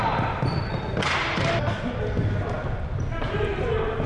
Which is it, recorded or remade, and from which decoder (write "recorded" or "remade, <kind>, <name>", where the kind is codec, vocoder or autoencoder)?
recorded